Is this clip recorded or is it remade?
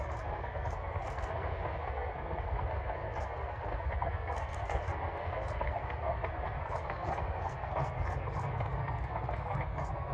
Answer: remade